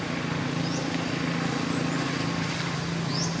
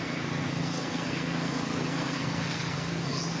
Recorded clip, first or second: first